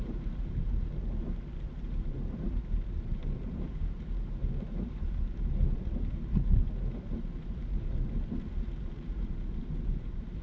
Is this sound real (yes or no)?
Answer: no